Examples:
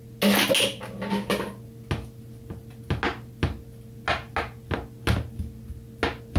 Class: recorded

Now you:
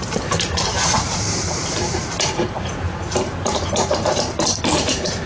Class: remade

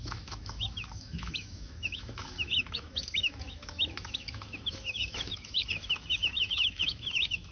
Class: remade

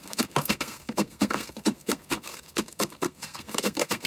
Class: remade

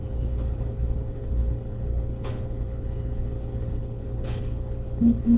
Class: remade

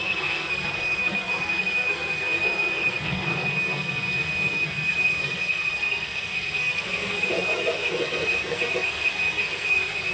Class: remade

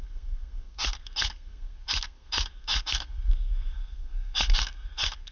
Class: remade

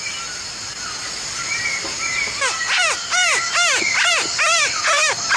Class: recorded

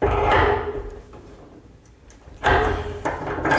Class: remade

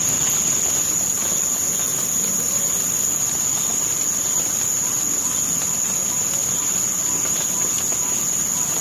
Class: recorded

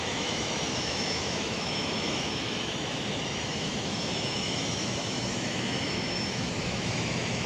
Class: remade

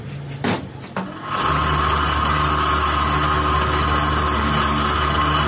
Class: recorded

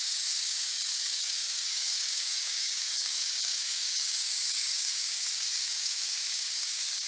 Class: remade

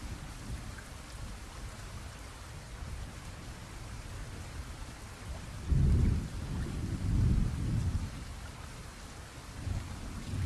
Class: recorded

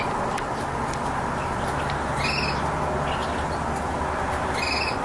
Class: recorded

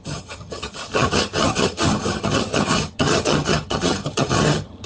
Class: remade